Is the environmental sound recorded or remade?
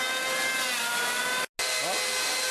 recorded